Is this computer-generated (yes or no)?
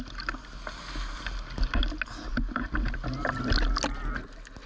no